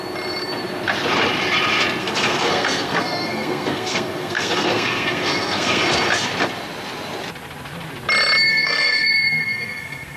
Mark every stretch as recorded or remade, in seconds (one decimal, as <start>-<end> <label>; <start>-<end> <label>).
0.0-2.0 recorded; 2.0-5.8 remade; 5.8-8.5 recorded; 8.5-10.2 remade